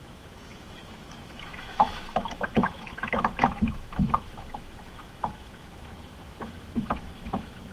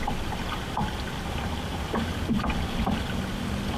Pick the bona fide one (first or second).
second